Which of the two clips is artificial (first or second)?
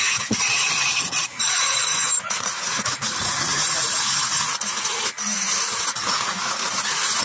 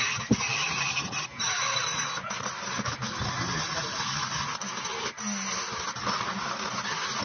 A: first